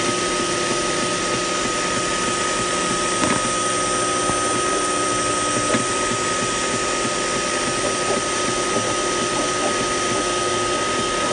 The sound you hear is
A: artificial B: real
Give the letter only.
B